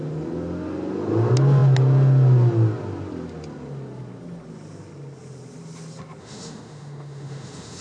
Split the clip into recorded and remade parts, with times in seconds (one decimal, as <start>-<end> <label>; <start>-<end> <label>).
0.0-6.2 recorded; 6.2-7.8 remade